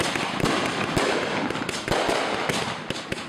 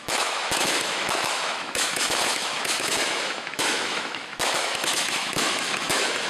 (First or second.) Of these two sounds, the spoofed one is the second